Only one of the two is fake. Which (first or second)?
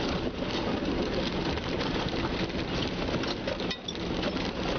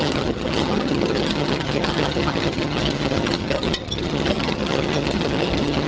second